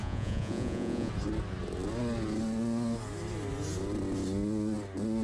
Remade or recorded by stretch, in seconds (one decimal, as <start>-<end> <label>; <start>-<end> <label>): 0.0-1.1 remade; 1.1-5.2 recorded